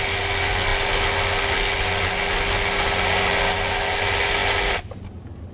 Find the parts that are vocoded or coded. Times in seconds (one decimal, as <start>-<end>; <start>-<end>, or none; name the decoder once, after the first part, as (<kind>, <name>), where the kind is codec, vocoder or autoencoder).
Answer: none